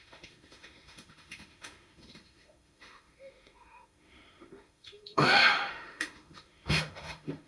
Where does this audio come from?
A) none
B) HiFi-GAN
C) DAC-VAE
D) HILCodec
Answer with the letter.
C